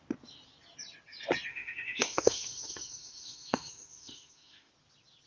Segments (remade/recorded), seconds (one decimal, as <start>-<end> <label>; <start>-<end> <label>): 0.0-1.5 recorded; 1.5-4.7 remade; 4.7-5.3 recorded

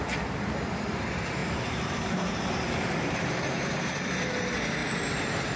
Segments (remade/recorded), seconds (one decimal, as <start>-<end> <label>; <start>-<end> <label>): 0.0-1.4 recorded; 1.4-3.8 remade; 3.8-4.8 recorded; 4.8-5.6 remade

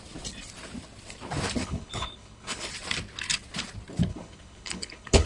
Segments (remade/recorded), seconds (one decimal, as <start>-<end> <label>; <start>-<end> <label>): 0.0-1.6 recorded; 1.6-2.7 remade; 2.7-4.1 recorded; 4.1-5.3 remade